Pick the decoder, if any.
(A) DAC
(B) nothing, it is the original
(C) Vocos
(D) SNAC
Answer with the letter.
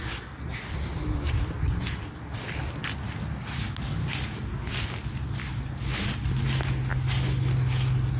B